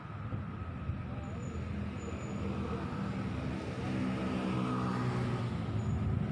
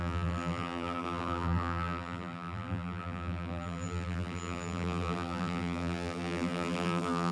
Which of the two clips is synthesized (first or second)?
second